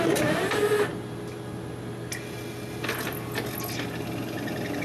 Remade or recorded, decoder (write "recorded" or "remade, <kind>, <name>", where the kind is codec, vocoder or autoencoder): recorded